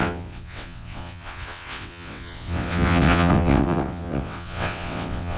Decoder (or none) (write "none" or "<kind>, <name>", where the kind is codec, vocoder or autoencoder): vocoder, WaveNeXt